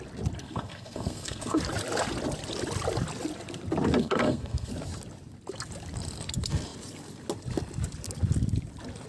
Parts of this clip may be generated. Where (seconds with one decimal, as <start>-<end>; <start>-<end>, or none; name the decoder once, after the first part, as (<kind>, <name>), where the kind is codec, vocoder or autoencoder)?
0.4-1.6 (codec, SNAC); 4.0-4.7